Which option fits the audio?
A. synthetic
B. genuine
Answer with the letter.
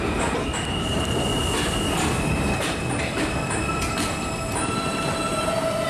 B